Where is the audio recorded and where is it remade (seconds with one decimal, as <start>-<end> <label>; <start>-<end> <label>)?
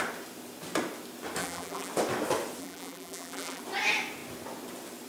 0.0-1.4 recorded; 1.4-1.9 remade; 1.9-2.6 recorded; 2.6-3.6 remade; 3.6-5.1 recorded